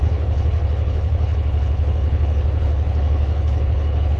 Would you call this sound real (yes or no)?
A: no